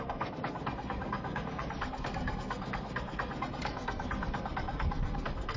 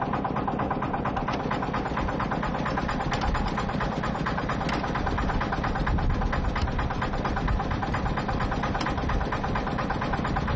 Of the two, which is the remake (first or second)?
first